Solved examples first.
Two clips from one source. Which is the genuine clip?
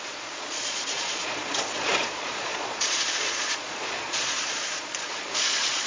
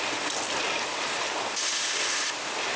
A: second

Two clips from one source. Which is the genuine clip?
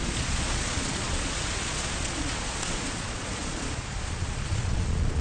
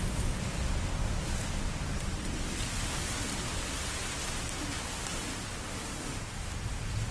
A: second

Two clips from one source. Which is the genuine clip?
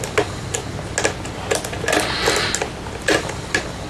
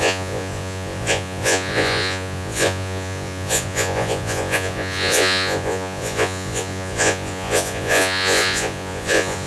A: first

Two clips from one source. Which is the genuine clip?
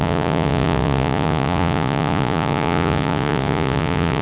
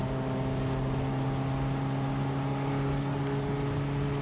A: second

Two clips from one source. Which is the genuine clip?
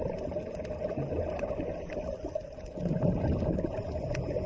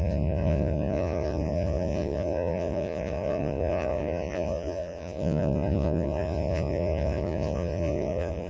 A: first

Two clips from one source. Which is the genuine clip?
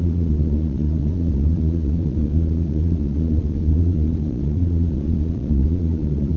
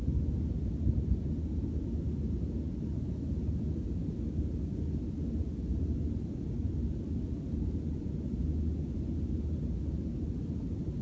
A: second